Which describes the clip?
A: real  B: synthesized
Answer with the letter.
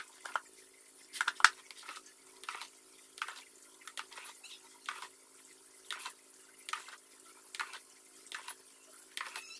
A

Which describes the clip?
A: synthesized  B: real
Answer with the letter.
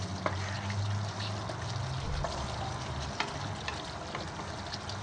B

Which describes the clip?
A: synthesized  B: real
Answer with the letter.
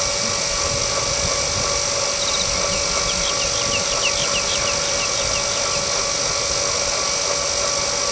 B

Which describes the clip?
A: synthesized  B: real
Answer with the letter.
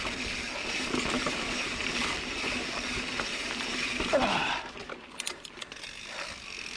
A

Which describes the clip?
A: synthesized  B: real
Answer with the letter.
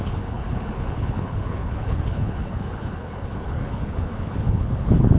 A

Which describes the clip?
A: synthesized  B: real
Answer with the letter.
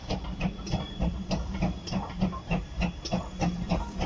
B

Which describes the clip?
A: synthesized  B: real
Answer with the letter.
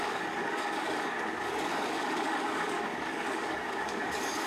A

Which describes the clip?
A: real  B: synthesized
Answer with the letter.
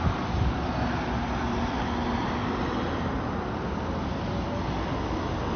A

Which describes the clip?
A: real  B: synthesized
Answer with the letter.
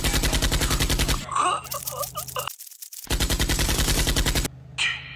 A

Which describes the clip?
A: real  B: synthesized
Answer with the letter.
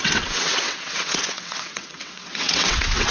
B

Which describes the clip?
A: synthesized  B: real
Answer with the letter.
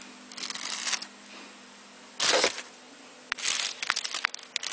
B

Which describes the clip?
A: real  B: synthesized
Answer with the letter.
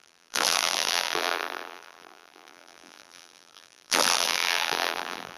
B